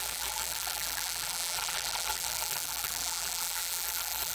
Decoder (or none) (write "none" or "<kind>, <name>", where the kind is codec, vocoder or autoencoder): vocoder, BigVGAN v2